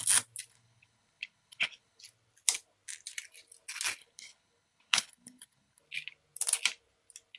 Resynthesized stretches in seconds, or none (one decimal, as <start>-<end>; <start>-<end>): 0.5-2.0; 4.0-5.8